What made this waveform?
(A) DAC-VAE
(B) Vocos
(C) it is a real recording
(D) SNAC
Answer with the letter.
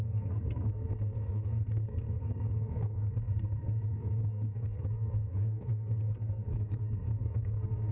D